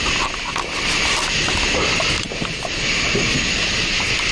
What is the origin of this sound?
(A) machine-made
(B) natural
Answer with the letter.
B